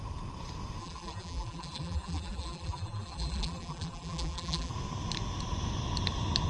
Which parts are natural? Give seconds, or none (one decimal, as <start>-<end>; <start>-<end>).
0.0-0.8; 4.7-6.5